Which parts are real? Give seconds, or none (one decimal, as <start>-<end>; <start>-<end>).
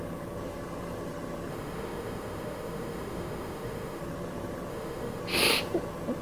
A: 0.0-1.5; 4.0-4.7; 5.2-6.2